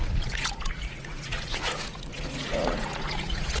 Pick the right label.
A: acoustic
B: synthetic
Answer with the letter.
B